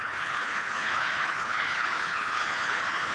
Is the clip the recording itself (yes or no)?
no